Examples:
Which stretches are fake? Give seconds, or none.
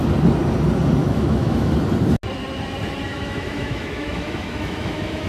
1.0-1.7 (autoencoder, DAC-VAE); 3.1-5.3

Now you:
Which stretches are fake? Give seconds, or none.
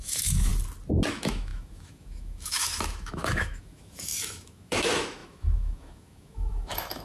0.0-0.5 (autoencoder, DAC-VAE); 1.1-7.0